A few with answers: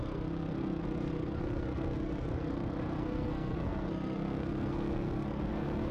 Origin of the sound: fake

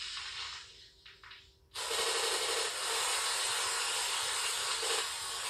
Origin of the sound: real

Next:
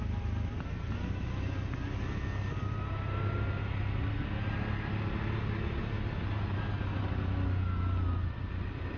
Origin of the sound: real